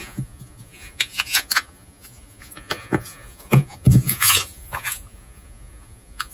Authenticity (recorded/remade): remade